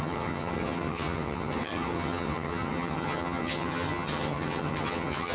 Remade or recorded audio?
remade